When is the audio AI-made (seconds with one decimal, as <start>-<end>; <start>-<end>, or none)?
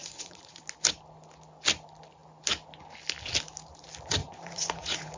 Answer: 0.0-0.6; 4.2-5.2